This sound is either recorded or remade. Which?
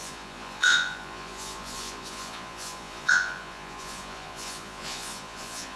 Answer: remade